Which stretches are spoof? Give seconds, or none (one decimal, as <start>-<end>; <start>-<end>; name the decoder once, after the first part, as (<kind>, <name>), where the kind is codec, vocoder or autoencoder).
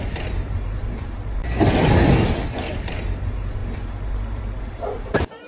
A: 0.0-1.4 (vocoder, BigVGAN v2); 2.3-3.6; 4.4-5.5